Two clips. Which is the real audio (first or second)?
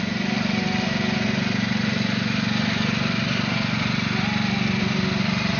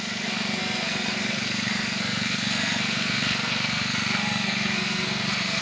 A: first